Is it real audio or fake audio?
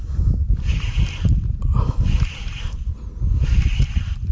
real